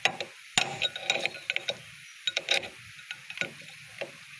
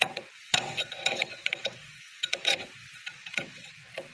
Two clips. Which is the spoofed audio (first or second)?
second